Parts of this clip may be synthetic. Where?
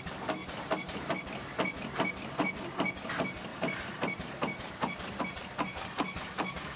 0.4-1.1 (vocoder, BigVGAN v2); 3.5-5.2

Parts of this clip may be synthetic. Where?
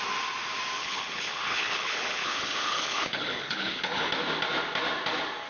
0.8-4.1 (codec, HILCodec)